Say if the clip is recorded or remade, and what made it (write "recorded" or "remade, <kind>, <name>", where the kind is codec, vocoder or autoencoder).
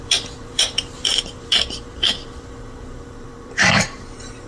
remade, vocoder, BigVGAN v2